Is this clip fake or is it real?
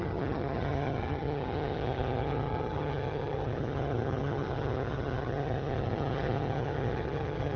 fake